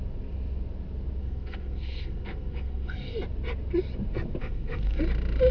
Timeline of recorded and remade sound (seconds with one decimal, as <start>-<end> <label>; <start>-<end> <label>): 0.0-1.2 recorded; 1.2-3.1 remade; 3.1-4.4 recorded; 4.4-5.0 remade; 5.0-5.5 recorded